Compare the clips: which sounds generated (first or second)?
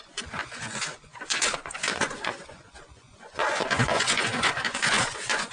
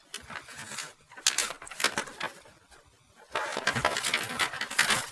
first